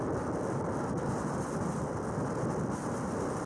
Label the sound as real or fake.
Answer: real